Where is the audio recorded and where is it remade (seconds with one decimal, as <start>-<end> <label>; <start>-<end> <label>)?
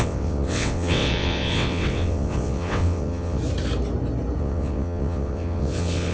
0.0-3.4 remade; 3.4-4.4 recorded; 4.4-6.1 remade